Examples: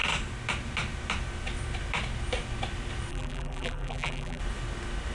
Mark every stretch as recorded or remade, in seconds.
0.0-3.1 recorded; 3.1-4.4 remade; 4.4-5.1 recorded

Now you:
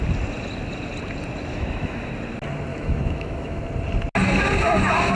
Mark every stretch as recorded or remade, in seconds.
0.0-1.5 recorded; 1.5-2.1 remade; 2.1-2.7 recorded; 2.7-3.6 remade; 3.6-5.2 recorded

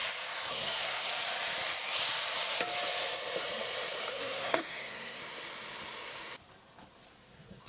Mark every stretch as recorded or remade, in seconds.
0.0-0.5 recorded; 0.5-1.1 remade; 1.1-4.1 recorded; 4.1-5.2 remade; 5.2-7.2 recorded; 7.2-7.7 remade

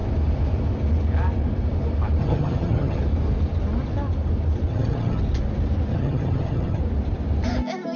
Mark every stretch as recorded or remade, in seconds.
0.0-2.2 recorded; 2.2-3.0 remade; 3.0-4.7 recorded; 4.7-5.2 remade; 5.2-5.9 recorded; 5.9-6.8 remade; 6.8-8.0 recorded

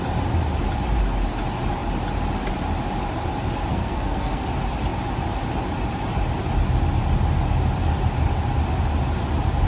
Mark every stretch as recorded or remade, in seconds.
0.0-3.7 recorded; 3.7-4.4 remade; 4.4-9.7 recorded

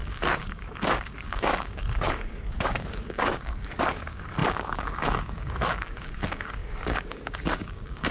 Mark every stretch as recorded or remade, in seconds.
0.0-8.1 remade

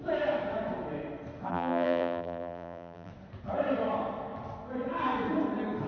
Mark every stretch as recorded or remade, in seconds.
0.0-1.5 recorded; 1.5-3.1 remade; 3.1-5.9 recorded

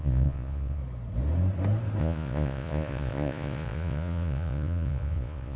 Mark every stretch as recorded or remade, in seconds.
0.0-0.8 remade; 0.8-2.0 recorded; 2.0-5.6 remade